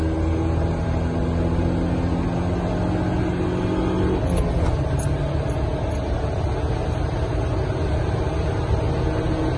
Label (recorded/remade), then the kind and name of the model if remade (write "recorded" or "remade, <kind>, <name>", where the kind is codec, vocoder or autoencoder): recorded